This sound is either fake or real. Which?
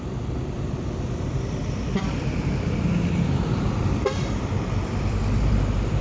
fake